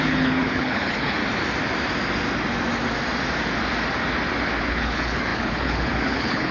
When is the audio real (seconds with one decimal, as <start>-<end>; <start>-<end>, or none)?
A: 1.2-4.6